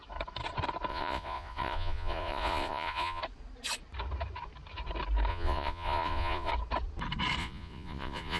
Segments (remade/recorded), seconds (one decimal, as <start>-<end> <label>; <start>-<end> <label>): 0.0-0.9 recorded; 0.9-3.2 remade; 3.2-5.3 recorded; 5.3-6.5 remade; 6.5-7.4 recorded; 7.4-8.4 remade

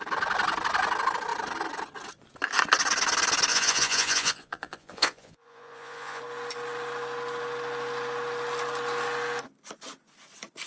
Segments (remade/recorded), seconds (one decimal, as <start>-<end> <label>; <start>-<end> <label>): 0.0-3.5 recorded; 3.5-6.2 remade; 6.2-10.7 recorded

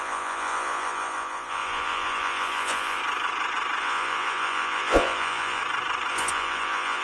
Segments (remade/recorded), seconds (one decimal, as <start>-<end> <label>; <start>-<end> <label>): 0.0-3.0 remade; 3.0-3.8 recorded; 3.8-5.6 remade; 5.6-6.1 recorded; 6.1-7.0 remade

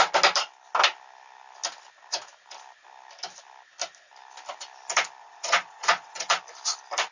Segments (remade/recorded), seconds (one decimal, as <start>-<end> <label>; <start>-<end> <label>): 0.0-5.2 recorded; 5.2-6.4 remade; 6.4-7.1 recorded

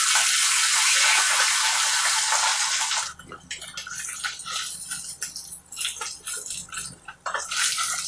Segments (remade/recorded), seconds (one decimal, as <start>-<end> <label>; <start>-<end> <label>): 0.0-0.7 recorded; 0.7-1.4 remade; 1.4-8.1 recorded

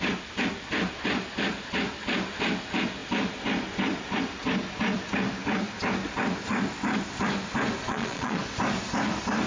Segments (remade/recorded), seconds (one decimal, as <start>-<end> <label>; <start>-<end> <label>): 0.0-7.9 recorded; 7.9-8.4 remade; 8.4-9.5 recorded

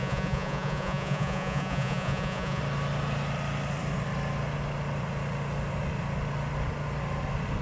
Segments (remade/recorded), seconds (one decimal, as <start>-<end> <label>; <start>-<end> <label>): 0.0-2.6 remade; 2.6-7.6 recorded